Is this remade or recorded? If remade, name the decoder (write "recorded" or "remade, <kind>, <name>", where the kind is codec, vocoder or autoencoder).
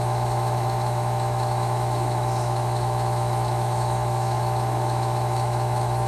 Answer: remade, autoencoder, DAC-VAE